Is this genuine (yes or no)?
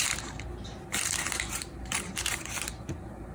no